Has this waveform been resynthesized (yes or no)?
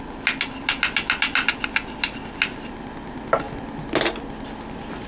no